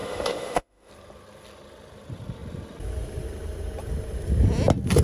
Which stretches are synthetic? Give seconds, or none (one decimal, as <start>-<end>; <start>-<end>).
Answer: 0.0-0.9